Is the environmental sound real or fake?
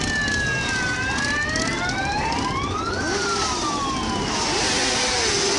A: real